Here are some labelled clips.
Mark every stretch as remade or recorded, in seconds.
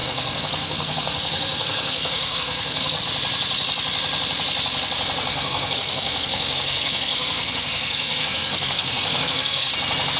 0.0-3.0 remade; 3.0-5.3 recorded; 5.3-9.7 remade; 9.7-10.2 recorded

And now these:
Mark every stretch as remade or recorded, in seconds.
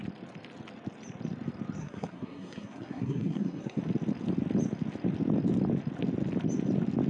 0.0-1.8 recorded; 1.8-3.8 remade; 3.8-7.1 recorded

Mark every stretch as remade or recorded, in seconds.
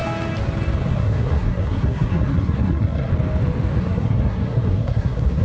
0.0-0.9 recorded; 0.9-3.1 remade; 3.1-3.8 recorded; 3.8-5.4 remade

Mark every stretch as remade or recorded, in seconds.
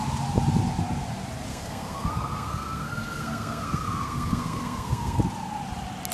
0.0-1.5 recorded; 1.5-5.2 remade; 5.2-6.1 recorded